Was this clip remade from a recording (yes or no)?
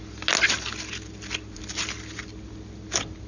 no